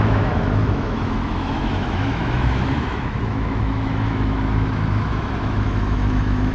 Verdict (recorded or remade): remade